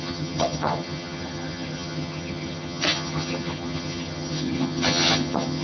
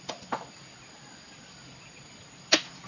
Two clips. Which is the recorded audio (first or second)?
second